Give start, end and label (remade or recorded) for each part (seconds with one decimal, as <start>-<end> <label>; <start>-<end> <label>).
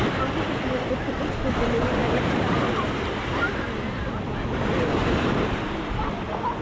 0.0-4.9 recorded; 4.9-5.6 remade; 5.6-6.6 recorded